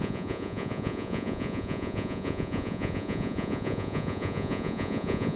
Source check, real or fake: fake